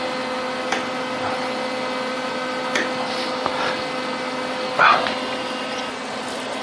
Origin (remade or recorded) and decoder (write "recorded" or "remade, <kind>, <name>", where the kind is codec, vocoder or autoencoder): recorded